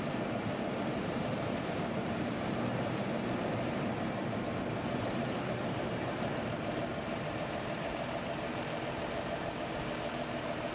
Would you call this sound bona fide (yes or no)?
no